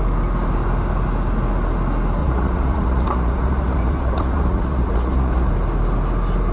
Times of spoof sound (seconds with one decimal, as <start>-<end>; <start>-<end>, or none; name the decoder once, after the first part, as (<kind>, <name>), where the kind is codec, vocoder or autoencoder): 2.2-5.5 (vocoder, Vocos)